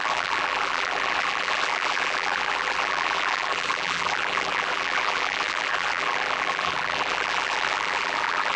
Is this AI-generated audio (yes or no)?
yes